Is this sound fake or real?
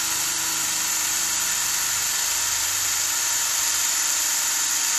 fake